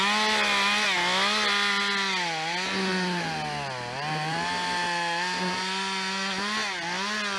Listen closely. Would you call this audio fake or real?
real